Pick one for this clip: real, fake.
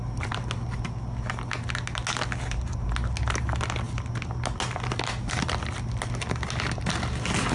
real